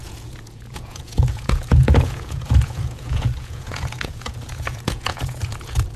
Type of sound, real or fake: fake